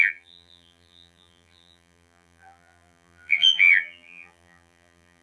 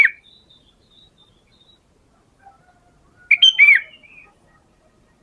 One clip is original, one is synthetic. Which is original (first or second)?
second